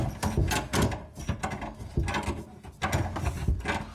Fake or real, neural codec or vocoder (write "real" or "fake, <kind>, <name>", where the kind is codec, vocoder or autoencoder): real